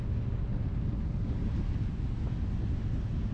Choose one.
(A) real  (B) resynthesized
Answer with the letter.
A